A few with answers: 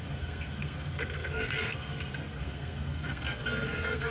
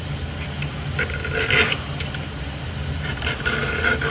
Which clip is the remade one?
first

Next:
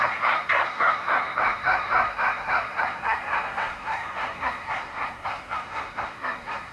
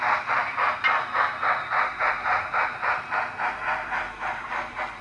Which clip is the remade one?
first